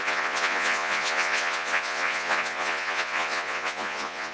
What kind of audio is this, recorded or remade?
remade